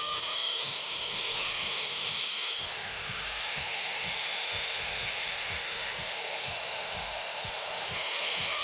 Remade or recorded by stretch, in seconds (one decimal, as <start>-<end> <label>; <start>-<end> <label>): 0.0-8.6 remade